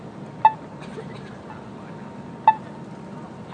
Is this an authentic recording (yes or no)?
yes